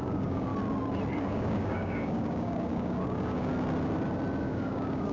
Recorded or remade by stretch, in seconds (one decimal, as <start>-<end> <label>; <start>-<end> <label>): 0.0-0.5 remade; 0.5-1.2 recorded; 1.2-3.5 remade; 3.5-4.4 recorded; 4.4-5.1 remade